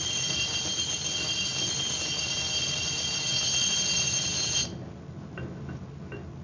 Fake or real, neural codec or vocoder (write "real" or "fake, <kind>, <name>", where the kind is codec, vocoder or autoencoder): real